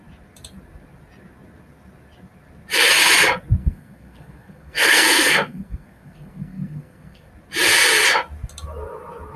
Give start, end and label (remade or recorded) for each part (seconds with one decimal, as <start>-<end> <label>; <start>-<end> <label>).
0.0-3.6 recorded; 3.6-7.3 remade; 7.3-9.4 recorded